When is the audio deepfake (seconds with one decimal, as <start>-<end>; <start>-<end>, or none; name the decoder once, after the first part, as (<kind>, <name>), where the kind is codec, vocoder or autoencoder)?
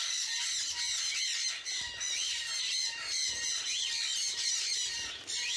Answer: none